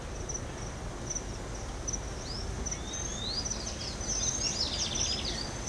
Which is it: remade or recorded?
recorded